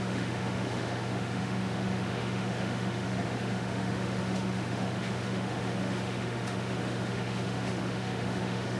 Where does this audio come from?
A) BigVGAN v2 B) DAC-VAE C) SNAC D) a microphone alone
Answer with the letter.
B